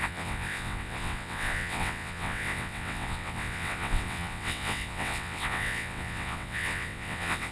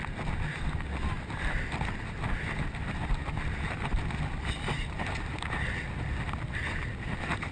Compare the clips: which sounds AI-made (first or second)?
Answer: first